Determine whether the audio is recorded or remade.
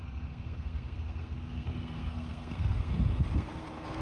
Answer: remade